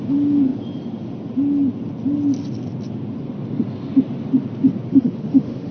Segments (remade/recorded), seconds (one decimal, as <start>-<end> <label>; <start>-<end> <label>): 0.0-4.9 recorded; 4.9-5.7 remade